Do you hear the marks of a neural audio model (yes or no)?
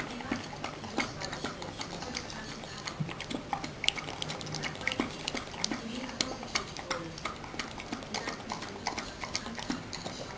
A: no